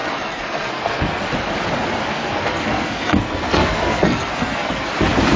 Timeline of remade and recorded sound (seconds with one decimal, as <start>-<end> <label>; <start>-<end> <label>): 0.0-1.2 remade; 1.2-2.0 recorded; 2.0-4.9 remade; 4.9-5.4 recorded